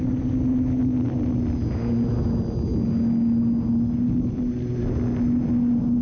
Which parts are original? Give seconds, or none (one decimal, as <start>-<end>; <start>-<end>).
0.0-6.0

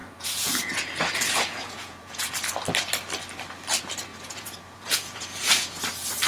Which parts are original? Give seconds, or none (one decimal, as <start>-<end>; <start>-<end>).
2.5-4.1; 5.8-6.3

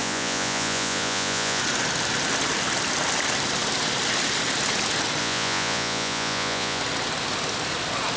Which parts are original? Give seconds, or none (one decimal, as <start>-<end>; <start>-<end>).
1.6-5.2; 6.8-8.2

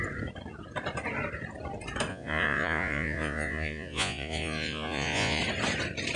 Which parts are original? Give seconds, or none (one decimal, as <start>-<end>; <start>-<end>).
0.0-2.1; 5.4-6.2

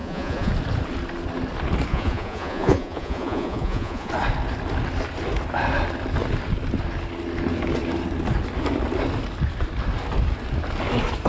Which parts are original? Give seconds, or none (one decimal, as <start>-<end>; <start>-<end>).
0.5-1.9; 4.1-11.3